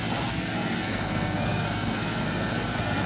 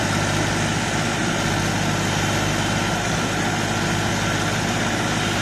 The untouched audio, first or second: second